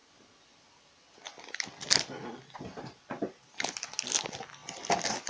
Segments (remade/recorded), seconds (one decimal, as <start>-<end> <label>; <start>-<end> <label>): 0.0-5.3 recorded